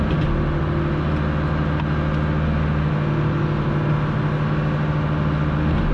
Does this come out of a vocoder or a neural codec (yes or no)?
no